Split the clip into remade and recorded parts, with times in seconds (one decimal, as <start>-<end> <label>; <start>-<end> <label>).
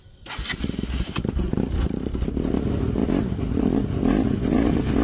0.0-5.0 recorded